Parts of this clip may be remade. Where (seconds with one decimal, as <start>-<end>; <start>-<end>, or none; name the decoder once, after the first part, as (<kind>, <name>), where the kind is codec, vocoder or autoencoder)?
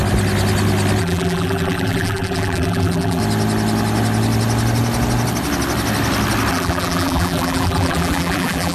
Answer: 1.0-3.2 (vocoder, BigVGAN v2); 6.5-8.7